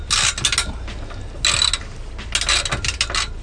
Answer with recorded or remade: recorded